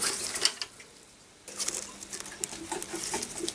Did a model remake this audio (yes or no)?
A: no